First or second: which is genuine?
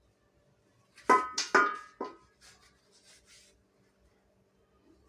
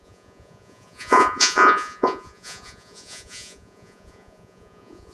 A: first